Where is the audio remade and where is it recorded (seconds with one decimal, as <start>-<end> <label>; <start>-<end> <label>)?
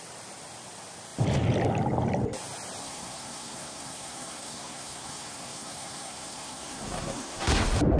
0.0-2.8 recorded; 2.8-7.6 remade; 7.6-8.0 recorded